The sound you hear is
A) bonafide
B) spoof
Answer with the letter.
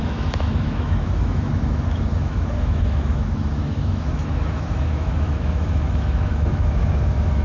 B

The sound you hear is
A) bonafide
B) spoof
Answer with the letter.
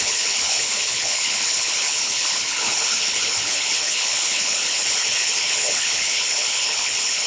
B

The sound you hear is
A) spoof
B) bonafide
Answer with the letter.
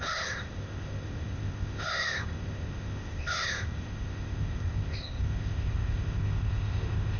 A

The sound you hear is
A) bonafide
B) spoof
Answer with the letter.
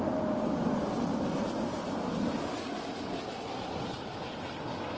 A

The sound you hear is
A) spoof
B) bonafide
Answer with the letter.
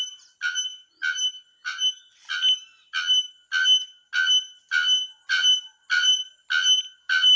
B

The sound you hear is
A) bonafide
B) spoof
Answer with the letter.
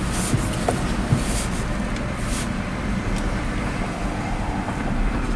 A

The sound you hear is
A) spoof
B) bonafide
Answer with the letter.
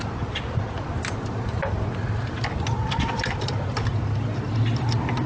B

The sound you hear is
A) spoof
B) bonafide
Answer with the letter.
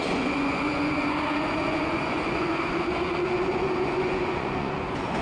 A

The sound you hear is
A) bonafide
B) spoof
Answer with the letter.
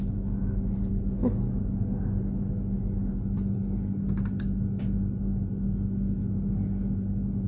A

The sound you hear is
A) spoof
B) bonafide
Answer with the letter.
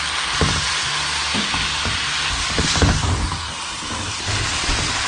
B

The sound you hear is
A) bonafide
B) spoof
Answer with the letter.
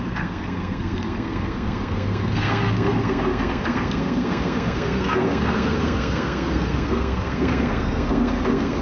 B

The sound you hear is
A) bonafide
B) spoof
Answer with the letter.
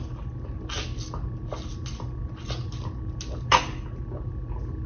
A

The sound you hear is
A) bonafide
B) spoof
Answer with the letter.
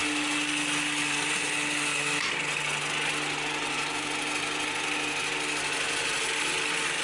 A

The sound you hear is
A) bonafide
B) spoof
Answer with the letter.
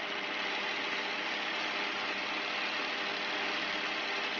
A